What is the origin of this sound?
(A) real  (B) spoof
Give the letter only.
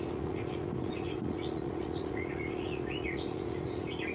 B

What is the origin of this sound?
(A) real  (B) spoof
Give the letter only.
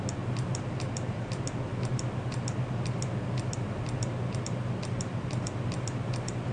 A